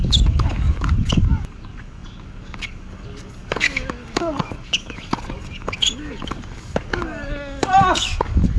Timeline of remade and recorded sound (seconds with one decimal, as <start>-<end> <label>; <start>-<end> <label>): 0.0-8.6 remade